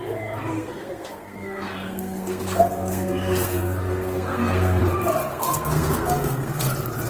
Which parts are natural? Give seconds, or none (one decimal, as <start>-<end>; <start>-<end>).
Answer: 0.0-0.5; 4.8-5.3; 6.6-7.1